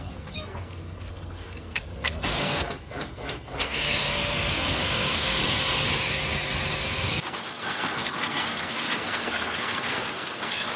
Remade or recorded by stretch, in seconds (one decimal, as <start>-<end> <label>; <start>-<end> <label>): 0.0-5.4 remade; 5.4-6.7 recorded; 6.7-10.8 remade